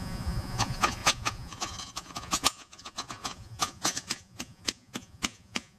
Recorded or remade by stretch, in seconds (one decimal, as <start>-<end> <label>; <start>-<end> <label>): 0.0-5.8 remade